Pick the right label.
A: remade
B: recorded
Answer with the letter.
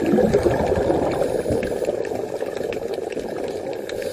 B